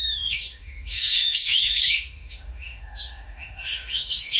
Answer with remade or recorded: remade